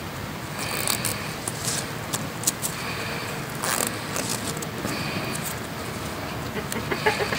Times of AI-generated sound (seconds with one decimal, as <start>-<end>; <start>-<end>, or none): 1.1-3.3